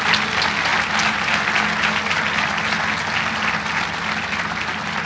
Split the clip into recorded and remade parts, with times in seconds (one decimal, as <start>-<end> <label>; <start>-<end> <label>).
0.0-5.1 recorded

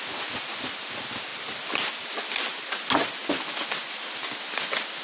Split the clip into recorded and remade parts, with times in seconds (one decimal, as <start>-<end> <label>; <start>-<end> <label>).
0.0-5.0 recorded

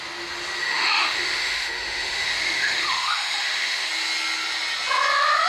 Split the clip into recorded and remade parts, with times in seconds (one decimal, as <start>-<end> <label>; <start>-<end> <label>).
0.0-0.6 recorded; 0.6-3.9 remade; 3.9-5.5 recorded

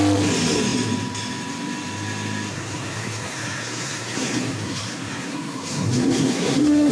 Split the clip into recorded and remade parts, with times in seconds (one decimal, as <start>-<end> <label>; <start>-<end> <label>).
0.0-2.5 recorded; 2.5-6.9 remade

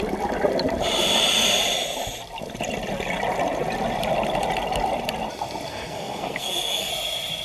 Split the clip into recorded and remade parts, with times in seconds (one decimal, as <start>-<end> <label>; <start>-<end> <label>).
0.0-5.7 recorded; 5.7-6.9 remade; 6.9-7.4 recorded